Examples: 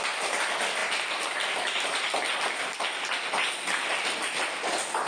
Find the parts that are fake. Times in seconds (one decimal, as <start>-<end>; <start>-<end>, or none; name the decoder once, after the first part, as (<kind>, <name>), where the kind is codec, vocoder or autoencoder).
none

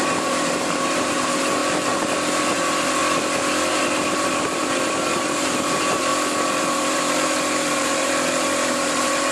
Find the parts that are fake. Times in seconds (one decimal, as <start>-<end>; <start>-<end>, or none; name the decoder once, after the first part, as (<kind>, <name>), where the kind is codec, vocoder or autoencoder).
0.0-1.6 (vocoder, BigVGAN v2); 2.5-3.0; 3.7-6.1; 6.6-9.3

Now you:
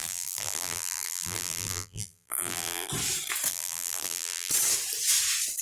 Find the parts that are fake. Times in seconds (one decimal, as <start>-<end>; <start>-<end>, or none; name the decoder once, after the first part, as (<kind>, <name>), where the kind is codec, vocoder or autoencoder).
0.0-2.9 (vocoder, BigVGAN v2); 3.5-4.5

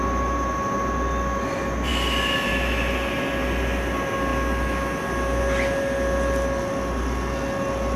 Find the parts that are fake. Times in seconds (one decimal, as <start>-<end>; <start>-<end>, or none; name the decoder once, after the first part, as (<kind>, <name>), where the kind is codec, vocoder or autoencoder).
none